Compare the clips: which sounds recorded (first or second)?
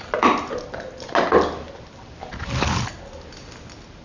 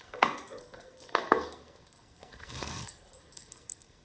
first